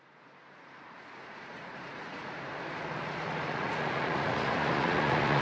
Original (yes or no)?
no